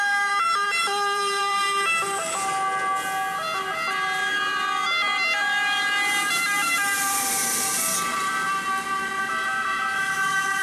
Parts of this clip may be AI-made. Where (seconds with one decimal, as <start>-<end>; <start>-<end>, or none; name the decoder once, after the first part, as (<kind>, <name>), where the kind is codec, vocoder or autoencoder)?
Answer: 0.0-2.5 (vocoder, BigVGAN v2); 3.4-10.6